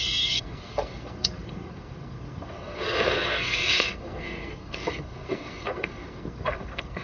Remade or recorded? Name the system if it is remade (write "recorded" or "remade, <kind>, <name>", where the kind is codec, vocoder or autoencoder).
remade, codec, SNAC